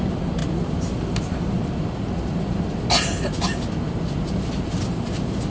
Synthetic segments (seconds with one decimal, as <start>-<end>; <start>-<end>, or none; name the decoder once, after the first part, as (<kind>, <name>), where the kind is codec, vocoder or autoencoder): none